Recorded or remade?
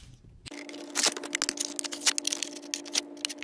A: recorded